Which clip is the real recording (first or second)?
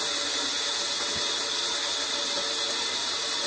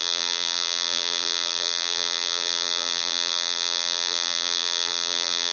first